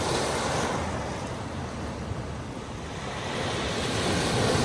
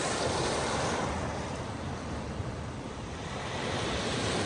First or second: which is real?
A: first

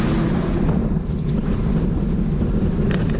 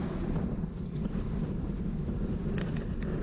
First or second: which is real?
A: first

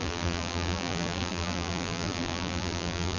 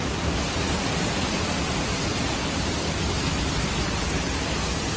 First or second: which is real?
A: second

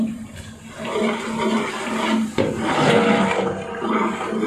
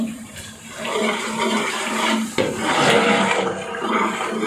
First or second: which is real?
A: first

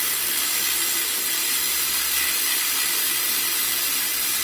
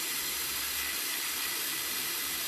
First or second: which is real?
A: first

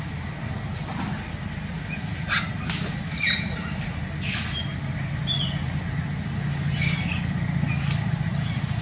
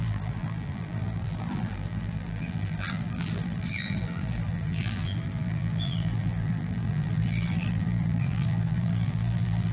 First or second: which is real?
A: first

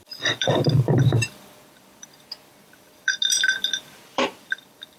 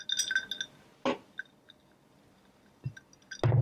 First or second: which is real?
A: second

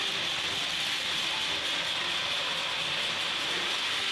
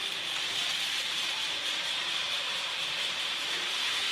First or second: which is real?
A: first